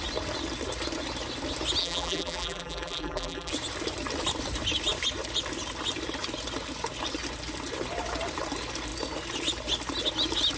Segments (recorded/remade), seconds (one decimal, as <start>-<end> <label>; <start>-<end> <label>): 0.0-1.8 recorded; 1.8-3.5 remade; 3.5-10.6 recorded